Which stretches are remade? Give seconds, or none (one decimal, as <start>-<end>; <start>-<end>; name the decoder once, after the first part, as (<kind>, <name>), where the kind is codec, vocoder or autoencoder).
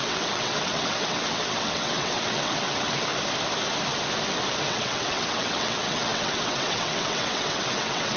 0.0-3.1 (vocoder, WaveNeXt); 4.6-8.2